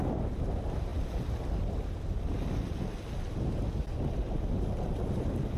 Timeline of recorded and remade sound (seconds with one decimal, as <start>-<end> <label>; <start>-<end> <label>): 0.0-0.9 recorded; 0.9-1.5 remade; 1.5-5.6 recorded